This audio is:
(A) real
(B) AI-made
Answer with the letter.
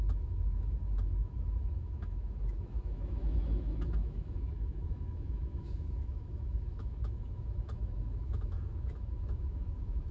B